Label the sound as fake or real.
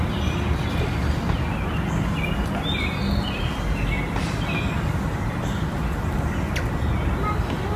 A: real